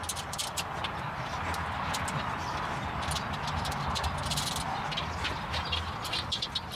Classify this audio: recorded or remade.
recorded